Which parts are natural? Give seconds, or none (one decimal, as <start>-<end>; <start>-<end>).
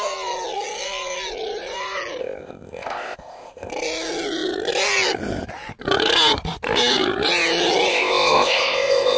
0.0-2.2; 3.7-7.9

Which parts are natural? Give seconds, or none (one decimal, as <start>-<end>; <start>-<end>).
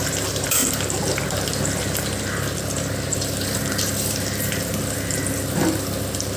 0.0-6.4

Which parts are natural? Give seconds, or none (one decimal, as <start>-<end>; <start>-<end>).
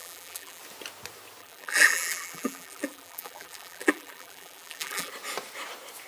0.6-1.4; 5.1-6.1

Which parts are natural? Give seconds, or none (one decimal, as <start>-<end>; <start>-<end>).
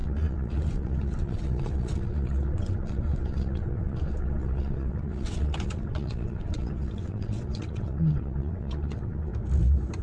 9.3-10.0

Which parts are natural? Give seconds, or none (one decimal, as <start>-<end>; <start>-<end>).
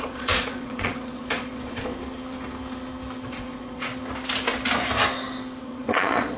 1.9-3.3; 3.9-5.6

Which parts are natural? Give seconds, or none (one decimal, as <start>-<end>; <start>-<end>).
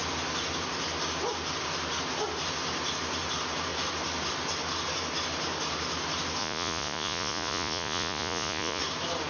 0.0-6.4; 8.8-9.3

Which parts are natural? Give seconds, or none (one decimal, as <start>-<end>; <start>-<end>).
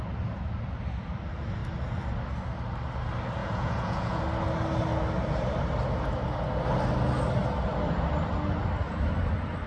0.0-3.4; 4.2-9.7